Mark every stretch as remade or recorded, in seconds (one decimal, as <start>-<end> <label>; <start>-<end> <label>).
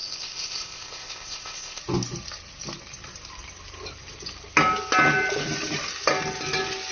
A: 0.0-1.8 remade; 1.8-6.9 recorded